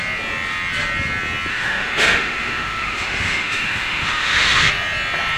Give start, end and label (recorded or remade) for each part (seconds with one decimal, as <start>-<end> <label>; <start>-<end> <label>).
0.0-1.5 recorded; 1.5-4.7 remade; 4.7-5.4 recorded